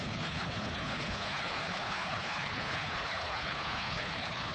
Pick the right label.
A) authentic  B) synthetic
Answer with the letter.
B